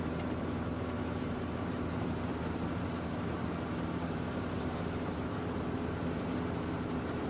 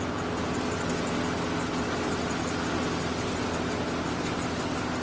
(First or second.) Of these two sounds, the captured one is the second